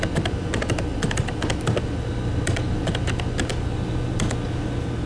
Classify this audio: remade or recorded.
recorded